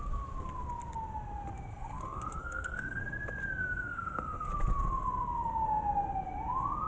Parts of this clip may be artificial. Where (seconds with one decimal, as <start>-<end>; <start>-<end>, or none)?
1.7-3.0; 3.6-4.5